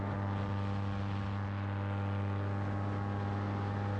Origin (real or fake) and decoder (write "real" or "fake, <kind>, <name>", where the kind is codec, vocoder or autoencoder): real